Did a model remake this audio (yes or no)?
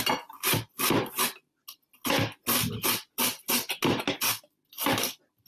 no